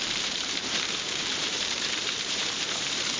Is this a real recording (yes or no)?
no